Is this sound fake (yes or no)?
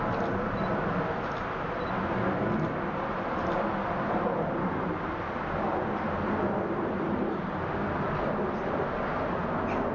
no